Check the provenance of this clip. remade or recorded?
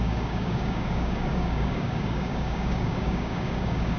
remade